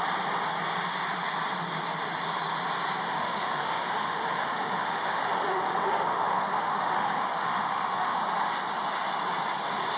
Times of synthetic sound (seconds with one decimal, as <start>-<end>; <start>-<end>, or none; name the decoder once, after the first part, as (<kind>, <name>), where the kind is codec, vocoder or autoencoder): 3.2-8.2 (autoencoder, DAC-VAE)